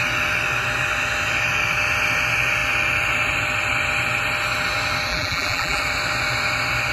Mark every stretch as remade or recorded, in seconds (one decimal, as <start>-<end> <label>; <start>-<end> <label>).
0.0-5.1 recorded; 5.1-5.8 remade; 5.8-6.9 recorded